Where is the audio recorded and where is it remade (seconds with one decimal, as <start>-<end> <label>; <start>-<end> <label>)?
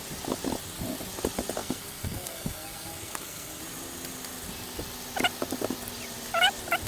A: 0.0-1.6 recorded; 1.6-3.6 remade; 3.6-6.9 recorded